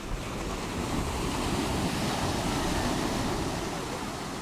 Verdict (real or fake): real